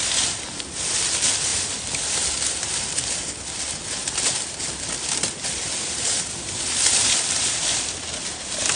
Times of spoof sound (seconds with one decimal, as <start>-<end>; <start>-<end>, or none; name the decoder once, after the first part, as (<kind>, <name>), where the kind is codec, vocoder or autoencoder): none